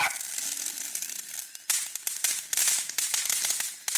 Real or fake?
real